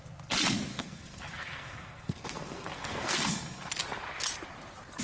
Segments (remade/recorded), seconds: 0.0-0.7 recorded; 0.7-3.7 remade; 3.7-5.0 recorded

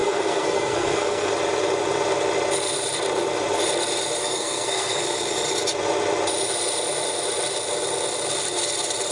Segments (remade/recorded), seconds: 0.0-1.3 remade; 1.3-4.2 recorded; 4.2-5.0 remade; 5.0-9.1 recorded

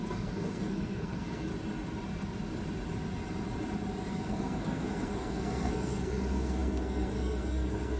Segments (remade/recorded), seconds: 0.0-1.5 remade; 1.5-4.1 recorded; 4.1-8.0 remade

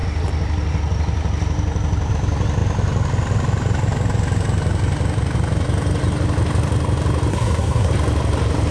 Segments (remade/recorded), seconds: 0.0-7.3 recorded; 7.3-7.9 remade; 7.9-8.7 recorded

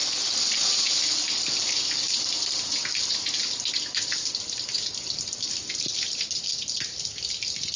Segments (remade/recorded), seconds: 0.0-7.8 recorded

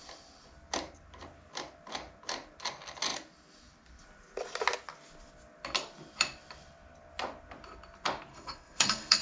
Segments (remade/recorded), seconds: 0.0-8.3 recorded; 8.3-9.2 remade